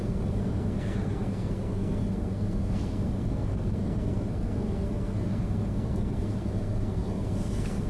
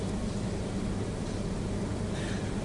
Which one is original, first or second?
second